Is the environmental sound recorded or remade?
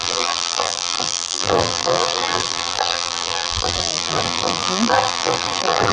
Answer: remade